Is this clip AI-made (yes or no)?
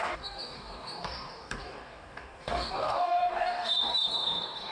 yes